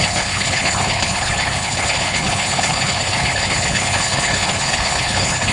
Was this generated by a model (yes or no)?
yes